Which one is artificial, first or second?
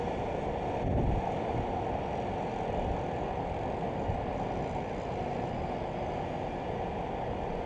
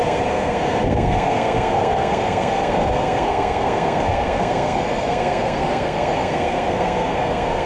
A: second